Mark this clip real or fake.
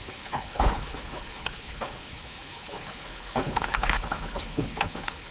fake